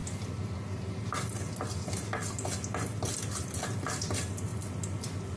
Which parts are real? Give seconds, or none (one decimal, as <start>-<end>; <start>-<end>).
0.0-5.4